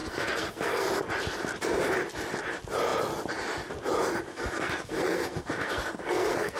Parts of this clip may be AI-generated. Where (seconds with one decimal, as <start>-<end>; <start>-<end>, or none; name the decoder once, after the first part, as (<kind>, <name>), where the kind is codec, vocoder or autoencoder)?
0.0-0.9 (codec, SNAC); 4.3-6.6